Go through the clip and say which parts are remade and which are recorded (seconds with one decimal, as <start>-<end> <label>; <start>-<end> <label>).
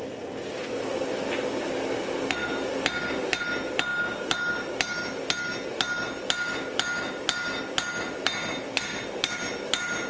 0.0-10.1 recorded